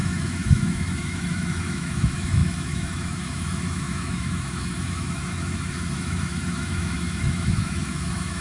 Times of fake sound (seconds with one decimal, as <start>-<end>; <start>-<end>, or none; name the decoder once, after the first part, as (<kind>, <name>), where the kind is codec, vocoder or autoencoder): 0.0-8.4 (autoencoder, DAC-VAE)